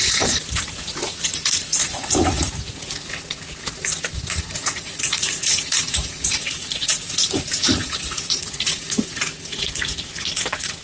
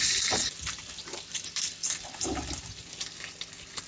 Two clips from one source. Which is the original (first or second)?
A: second